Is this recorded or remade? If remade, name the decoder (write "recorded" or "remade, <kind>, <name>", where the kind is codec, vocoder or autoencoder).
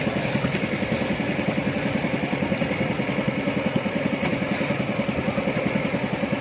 recorded